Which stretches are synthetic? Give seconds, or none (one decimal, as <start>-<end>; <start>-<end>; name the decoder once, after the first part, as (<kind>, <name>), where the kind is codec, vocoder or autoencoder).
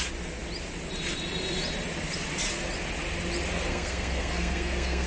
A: 3.7-5.1 (codec, SNAC)